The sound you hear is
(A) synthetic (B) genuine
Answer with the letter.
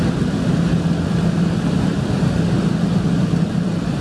B